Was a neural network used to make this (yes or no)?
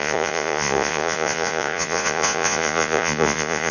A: yes